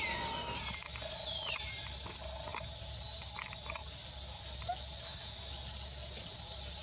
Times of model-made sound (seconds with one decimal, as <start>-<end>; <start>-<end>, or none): none